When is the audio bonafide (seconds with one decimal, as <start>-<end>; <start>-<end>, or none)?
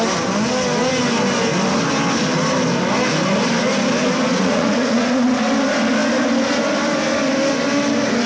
0.0-4.3; 5.4-8.3